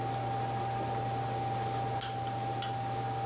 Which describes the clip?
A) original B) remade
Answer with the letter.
A